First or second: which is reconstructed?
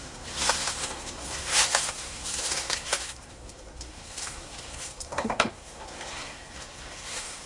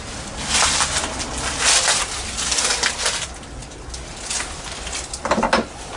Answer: first